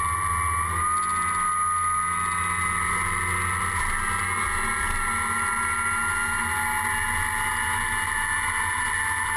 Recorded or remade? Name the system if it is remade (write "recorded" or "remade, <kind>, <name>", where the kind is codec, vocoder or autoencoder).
recorded